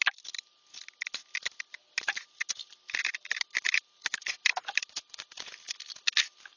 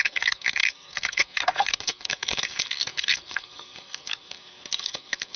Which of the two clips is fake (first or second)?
second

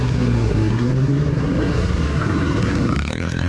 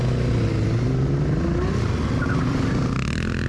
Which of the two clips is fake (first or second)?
first